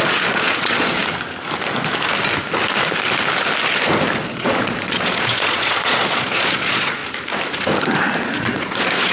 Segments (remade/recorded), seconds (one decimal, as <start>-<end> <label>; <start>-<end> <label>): 0.0-1.0 remade; 1.0-4.2 recorded; 4.2-7.0 remade; 7.0-8.0 recorded; 8.0-9.1 remade